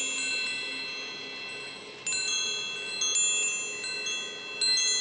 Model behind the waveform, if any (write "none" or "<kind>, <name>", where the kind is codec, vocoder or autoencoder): none